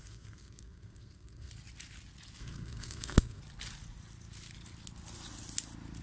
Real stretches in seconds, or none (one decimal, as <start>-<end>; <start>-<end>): 1.5-2.4; 3.4-6.0